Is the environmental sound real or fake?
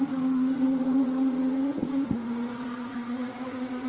fake